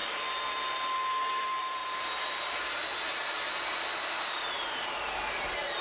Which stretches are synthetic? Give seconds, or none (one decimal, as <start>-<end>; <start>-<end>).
1.4-5.8